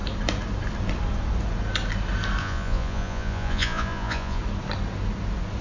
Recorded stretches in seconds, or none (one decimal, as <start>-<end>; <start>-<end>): 0.0-2.4; 4.4-5.6